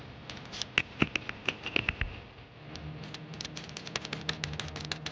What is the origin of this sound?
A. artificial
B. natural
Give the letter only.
B